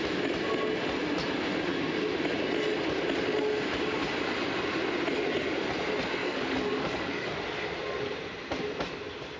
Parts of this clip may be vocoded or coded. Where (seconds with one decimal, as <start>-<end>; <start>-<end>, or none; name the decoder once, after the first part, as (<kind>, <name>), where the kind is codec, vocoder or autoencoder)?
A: 6.2-7.4 (codec, DAC)